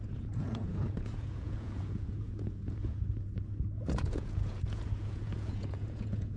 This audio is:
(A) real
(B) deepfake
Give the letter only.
B